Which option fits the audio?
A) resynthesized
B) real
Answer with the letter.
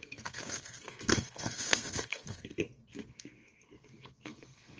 A